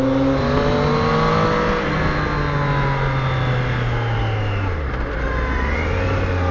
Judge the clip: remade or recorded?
recorded